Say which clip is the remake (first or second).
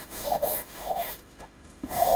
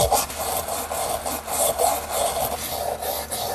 first